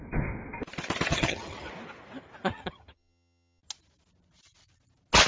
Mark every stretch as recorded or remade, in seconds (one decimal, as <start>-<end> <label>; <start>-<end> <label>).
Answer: 0.0-1.1 recorded; 1.1-1.7 remade; 1.7-2.5 recorded; 2.5-3.6 remade; 3.6-5.3 recorded